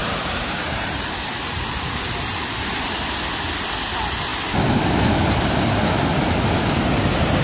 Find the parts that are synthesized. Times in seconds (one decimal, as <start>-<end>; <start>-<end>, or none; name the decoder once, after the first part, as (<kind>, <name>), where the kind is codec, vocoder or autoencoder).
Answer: 0.0-3.1 (vocoder, BigVGAN v2)